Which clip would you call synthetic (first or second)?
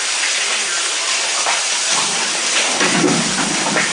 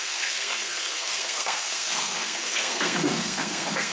second